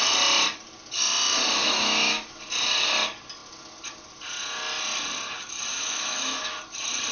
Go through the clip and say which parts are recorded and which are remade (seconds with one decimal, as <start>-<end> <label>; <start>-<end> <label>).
0.0-1.6 recorded; 1.6-2.4 remade; 2.4-5.7 recorded; 5.7-6.6 remade; 6.6-7.1 recorded